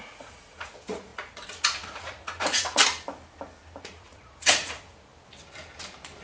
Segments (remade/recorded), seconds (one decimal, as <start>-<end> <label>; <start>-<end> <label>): 0.0-2.8 remade; 2.8-3.8 recorded; 3.8-5.1 remade; 5.1-6.2 recorded

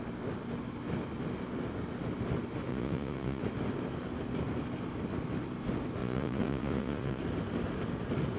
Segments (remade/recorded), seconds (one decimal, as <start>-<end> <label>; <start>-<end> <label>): 0.0-2.7 recorded; 2.7-3.4 remade; 3.4-6.0 recorded; 6.0-7.2 remade; 7.2-8.4 recorded

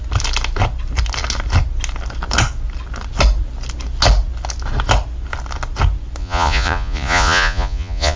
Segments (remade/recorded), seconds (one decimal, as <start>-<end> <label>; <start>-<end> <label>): 0.0-6.2 recorded; 6.2-8.2 remade

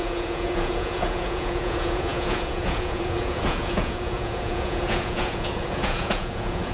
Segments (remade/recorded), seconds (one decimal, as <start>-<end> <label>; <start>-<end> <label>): 0.0-6.7 remade

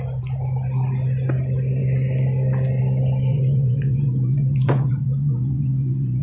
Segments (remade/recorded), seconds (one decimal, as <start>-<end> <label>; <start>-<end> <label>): 0.0-3.3 recorded; 3.3-6.2 remade